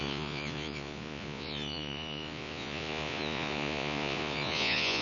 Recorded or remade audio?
remade